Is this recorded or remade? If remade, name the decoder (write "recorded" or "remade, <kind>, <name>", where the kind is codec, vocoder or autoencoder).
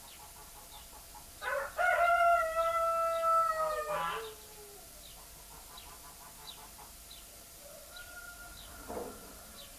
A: recorded